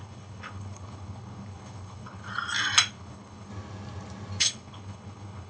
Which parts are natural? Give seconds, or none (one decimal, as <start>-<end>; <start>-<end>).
2.3-2.9; 3.5-4.4